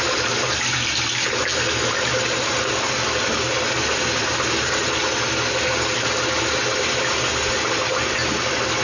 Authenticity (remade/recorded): recorded